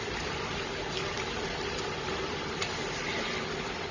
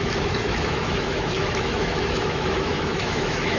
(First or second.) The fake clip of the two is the second